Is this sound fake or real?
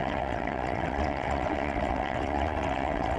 fake